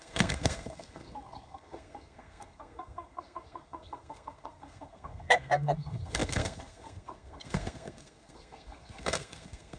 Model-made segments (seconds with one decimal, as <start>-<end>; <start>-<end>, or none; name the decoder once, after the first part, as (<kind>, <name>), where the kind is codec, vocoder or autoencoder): 0.0-9.8 (codec, SNAC)